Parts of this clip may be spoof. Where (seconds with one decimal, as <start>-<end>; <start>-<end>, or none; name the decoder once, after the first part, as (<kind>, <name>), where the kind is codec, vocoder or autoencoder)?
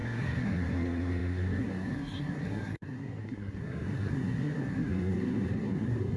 0.0-6.2 (codec, SNAC)